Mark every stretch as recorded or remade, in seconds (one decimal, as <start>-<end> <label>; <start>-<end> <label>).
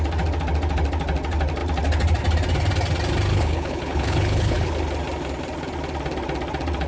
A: 0.0-3.3 recorded; 3.3-4.7 remade; 4.7-6.9 recorded